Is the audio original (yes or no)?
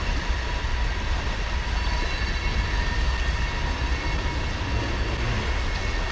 yes